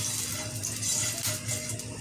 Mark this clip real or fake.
real